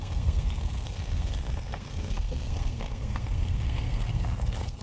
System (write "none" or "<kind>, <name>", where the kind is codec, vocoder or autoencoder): codec, SNAC